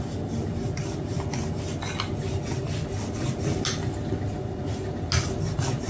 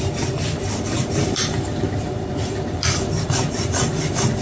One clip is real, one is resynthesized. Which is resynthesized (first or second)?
second